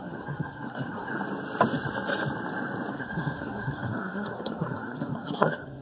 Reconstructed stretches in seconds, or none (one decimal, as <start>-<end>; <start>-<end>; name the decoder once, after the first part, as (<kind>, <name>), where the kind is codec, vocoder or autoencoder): 0.0-1.1 (codec, SNAC); 2.9-5.8